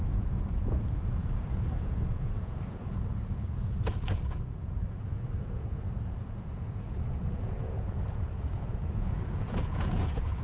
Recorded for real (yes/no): no